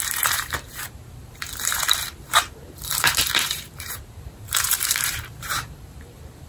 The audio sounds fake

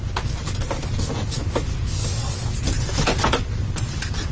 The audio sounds real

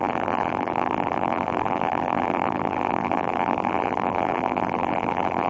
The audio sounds fake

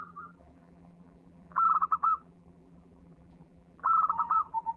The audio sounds fake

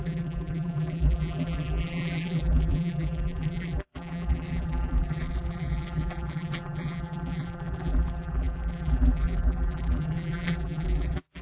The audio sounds fake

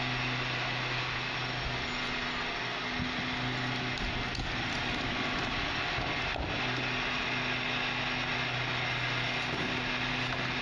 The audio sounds real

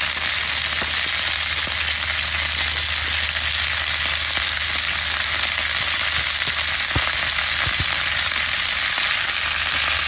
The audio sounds real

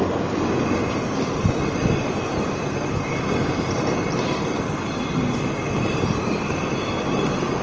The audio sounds real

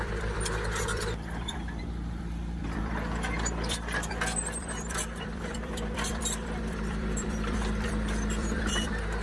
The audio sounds fake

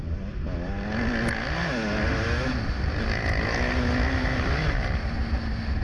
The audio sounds real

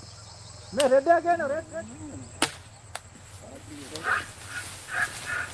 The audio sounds real